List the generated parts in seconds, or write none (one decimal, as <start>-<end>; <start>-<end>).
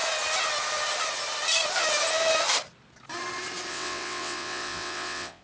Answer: 3.7-5.4